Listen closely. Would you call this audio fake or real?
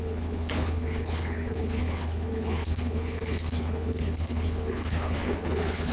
fake